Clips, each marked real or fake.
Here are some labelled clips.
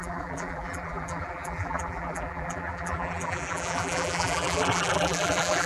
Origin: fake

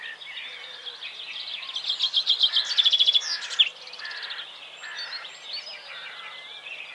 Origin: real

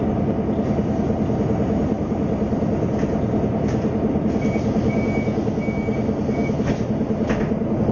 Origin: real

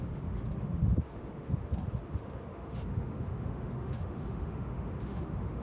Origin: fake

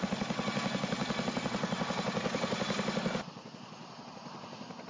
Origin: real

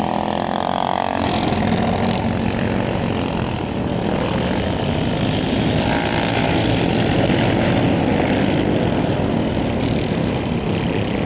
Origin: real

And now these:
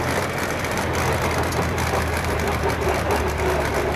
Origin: fake